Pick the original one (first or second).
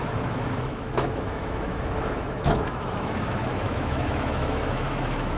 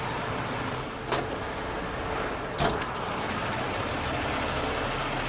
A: second